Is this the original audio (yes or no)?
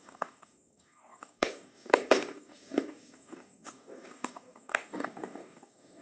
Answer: no